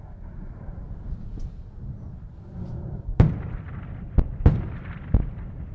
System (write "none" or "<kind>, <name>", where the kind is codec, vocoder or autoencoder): none